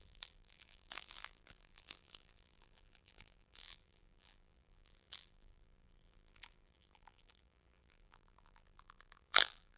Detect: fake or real fake